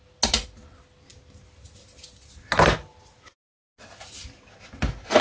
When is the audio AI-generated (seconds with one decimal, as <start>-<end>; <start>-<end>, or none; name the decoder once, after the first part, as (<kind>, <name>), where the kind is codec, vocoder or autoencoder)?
none